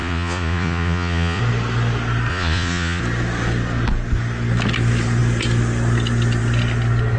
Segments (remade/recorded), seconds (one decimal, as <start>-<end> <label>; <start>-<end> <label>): 0.0-1.4 remade; 1.4-2.3 recorded; 2.3-3.0 remade; 3.0-7.2 recorded